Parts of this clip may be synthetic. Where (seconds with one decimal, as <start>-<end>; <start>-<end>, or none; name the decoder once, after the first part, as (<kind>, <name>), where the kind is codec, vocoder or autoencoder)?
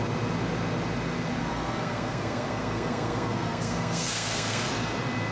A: 1.5-4.7 (codec, SNAC)